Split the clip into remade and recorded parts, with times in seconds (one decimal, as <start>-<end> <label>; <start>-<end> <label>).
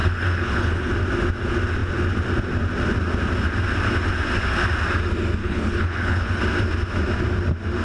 0.0-0.9 remade; 0.9-5.4 recorded; 5.4-6.4 remade; 6.4-7.8 recorded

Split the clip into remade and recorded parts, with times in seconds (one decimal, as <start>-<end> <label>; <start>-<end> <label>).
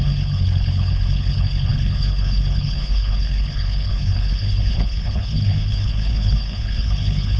0.0-7.4 remade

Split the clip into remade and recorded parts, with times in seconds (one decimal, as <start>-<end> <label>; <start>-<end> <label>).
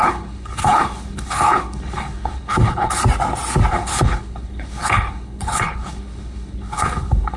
0.0-3.0 remade; 3.0-3.7 recorded; 3.7-7.4 remade